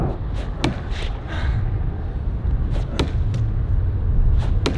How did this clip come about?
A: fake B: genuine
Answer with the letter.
B